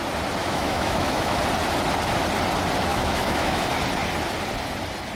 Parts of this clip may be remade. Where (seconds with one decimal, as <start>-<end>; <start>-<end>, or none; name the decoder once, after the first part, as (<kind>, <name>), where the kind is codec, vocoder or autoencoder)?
0.4-1.4 (autoencoder, DAC-VAE); 2.9-3.6